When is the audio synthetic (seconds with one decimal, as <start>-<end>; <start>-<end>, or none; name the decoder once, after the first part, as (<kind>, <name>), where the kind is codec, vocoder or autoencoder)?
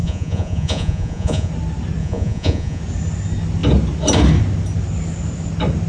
0.0-1.5 (vocoder, Vocos); 2.0-2.8